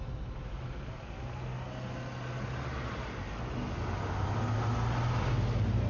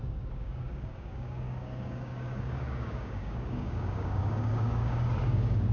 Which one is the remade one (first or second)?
second